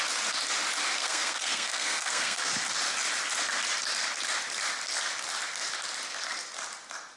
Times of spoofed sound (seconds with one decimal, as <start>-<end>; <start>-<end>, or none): 1.0-2.5